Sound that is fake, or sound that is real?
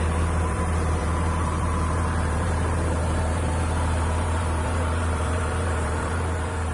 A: fake